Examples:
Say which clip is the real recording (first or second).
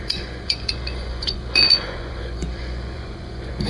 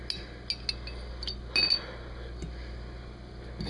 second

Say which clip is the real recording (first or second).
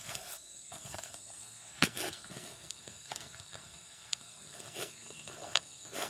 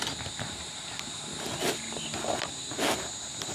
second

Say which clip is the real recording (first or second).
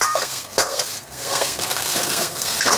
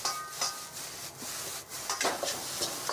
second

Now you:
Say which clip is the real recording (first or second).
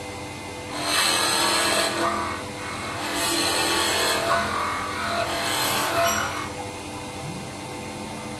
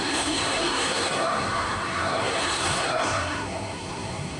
first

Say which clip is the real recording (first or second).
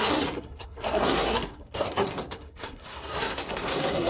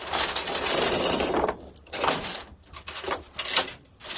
second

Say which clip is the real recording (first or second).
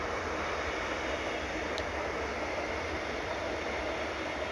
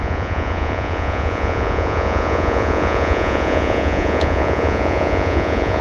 first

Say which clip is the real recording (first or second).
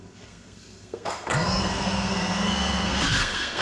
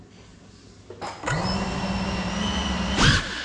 second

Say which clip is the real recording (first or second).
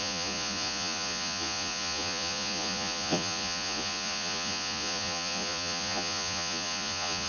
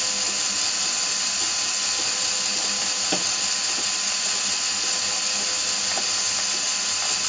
second